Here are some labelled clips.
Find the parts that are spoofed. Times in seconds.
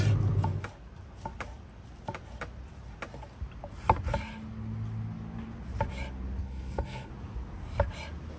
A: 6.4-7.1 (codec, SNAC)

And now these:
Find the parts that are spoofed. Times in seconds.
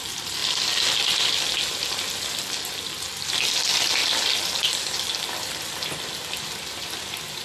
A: none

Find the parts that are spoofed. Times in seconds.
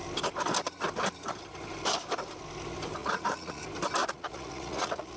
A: 3.0-3.6 (vocoder, Vocos); 4.0-5.2